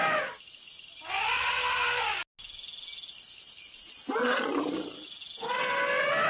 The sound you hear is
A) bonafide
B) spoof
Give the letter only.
A